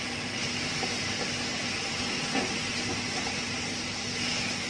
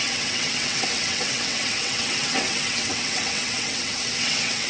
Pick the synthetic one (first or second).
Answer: second